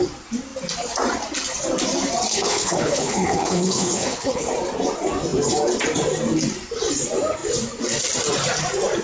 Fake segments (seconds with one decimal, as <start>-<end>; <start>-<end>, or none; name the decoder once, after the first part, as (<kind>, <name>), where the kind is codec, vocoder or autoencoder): 2.3-4.5 (codec, HILCodec)